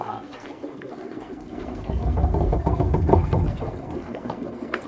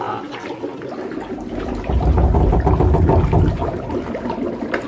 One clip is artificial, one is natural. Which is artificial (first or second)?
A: first